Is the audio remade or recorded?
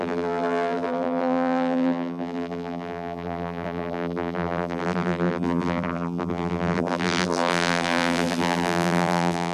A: remade